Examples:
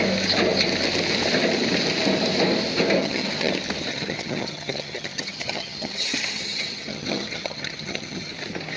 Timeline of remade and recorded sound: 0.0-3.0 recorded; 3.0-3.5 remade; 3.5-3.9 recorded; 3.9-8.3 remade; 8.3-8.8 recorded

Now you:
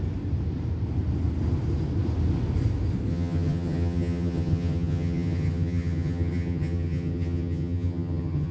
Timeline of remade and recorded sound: 0.0-3.1 recorded; 3.1-8.5 remade

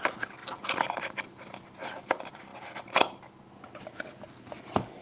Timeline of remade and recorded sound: 0.0-5.0 recorded

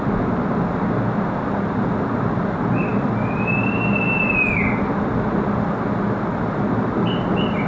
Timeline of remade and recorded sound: 0.0-7.7 recorded

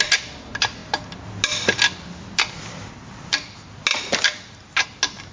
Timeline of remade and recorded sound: 0.0-5.3 recorded